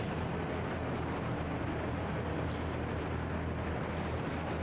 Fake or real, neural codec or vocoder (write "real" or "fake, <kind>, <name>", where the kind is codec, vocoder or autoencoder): real